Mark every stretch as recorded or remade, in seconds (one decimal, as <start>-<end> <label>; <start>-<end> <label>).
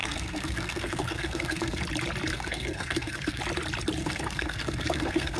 0.0-1.8 remade; 1.8-2.3 recorded; 2.3-3.4 remade; 3.4-4.0 recorded; 4.0-5.4 remade